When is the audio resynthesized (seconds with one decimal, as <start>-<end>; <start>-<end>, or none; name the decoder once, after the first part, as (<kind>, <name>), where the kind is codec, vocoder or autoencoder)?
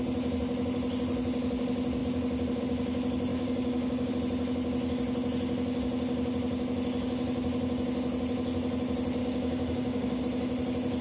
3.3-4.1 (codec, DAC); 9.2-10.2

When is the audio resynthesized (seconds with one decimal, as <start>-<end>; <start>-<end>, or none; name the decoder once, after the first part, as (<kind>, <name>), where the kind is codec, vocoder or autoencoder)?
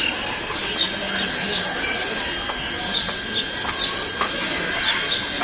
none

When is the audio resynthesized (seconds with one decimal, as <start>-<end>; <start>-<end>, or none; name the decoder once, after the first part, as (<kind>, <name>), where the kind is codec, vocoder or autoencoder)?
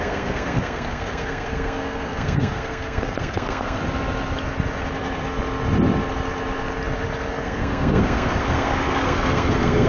0.0-3.8 (codec, SNAC); 7.4-9.9